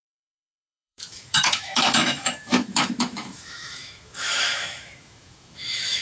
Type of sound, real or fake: fake